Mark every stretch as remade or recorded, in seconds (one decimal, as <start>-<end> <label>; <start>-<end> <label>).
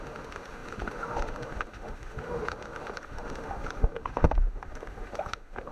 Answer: 0.0-5.7 remade